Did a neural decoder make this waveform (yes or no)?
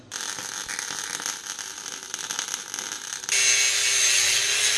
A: no